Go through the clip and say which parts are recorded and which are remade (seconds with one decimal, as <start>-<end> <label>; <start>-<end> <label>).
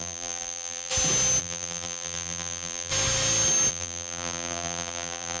0.0-0.9 remade; 0.9-1.4 recorded; 1.4-2.9 remade; 2.9-3.7 recorded; 3.7-5.4 remade